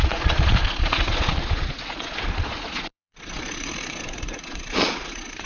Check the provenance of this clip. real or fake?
fake